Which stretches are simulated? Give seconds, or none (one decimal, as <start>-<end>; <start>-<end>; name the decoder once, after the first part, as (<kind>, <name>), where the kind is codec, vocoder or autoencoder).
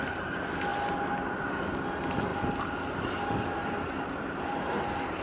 none